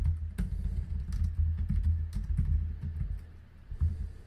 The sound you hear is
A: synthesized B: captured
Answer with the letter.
B